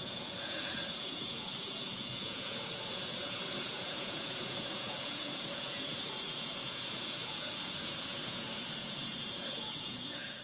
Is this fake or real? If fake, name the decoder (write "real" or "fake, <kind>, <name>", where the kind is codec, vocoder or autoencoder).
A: fake, vocoder, Vocos